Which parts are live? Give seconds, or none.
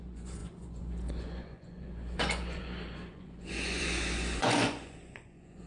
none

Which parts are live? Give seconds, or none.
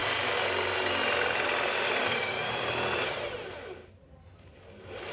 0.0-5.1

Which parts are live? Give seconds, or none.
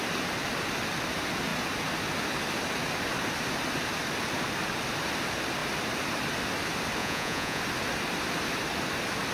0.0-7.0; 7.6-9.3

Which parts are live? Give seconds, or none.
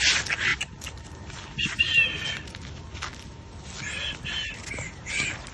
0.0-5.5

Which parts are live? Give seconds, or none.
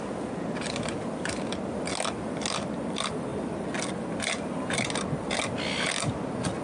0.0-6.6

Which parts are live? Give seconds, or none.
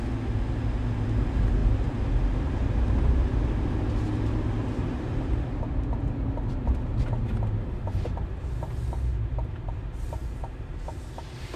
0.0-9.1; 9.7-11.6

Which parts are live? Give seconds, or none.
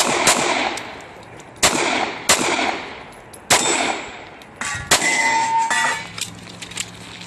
0.0-5.0; 5.7-7.3